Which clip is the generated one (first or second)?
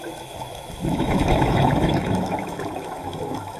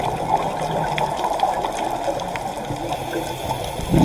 first